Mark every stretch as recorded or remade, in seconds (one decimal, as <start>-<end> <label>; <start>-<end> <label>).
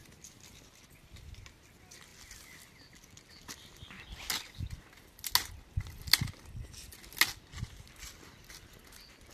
0.0-9.3 recorded